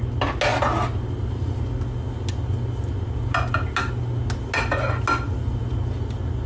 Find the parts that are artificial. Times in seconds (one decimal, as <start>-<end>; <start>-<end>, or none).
none